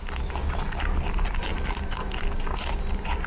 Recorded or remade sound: recorded